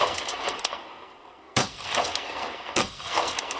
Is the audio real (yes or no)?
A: no